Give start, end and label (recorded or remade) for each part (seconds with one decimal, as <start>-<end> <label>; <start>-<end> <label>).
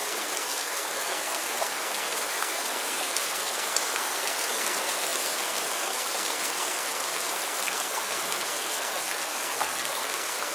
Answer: 0.0-10.5 remade